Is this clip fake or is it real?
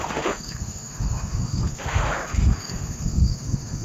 fake